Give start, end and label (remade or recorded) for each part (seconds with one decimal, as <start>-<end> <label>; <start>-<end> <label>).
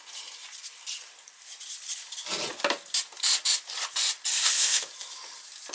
0.0-4.3 recorded; 4.3-4.9 remade; 4.9-5.7 recorded